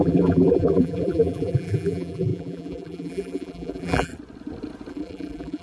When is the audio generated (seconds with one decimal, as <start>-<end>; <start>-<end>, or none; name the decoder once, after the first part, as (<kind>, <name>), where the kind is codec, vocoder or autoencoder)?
0.0-4.1 (vocoder, BigVGAN v2); 4.9-5.6